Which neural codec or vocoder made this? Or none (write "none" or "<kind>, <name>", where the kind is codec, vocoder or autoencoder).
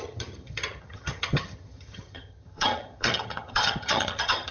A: vocoder, HiFi-GAN